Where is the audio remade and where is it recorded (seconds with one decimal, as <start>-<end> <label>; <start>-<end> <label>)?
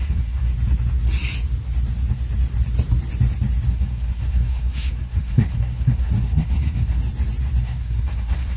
0.0-0.5 remade; 0.5-3.7 recorded; 3.7-7.0 remade; 7.0-7.6 recorded; 7.6-8.6 remade